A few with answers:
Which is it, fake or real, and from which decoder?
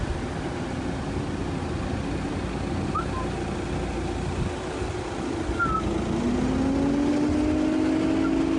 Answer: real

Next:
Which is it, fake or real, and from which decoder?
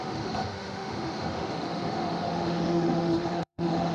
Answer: fake, autoencoder, DAC-VAE